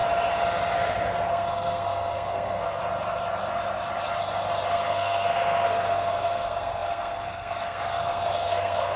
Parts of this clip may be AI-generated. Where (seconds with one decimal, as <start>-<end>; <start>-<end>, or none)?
1.3-2.8; 4.7-9.0